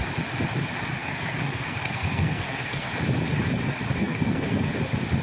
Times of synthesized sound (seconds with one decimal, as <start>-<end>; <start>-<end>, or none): 1.0-2.9; 4.0-4.6